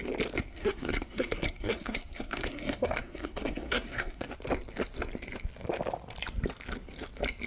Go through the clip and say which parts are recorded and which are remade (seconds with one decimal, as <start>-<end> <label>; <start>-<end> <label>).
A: 0.0-0.5 recorded; 0.5-4.3 remade; 4.3-7.5 recorded